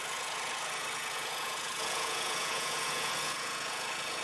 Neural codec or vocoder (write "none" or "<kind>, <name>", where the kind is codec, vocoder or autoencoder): vocoder, Vocos